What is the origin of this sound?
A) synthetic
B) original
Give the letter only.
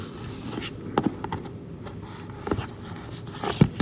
B